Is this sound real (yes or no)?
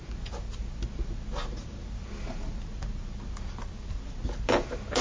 yes